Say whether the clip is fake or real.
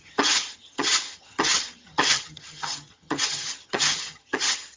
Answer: fake